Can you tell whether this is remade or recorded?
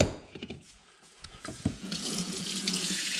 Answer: remade